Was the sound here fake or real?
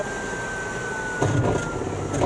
real